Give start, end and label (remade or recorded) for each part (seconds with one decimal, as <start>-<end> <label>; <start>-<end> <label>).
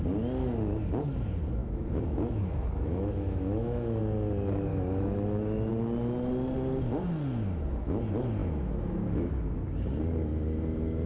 0.0-1.6 recorded; 1.6-4.0 remade; 4.0-4.7 recorded; 4.7-5.7 remade; 5.7-8.4 recorded; 8.4-9.3 remade; 9.3-11.1 recorded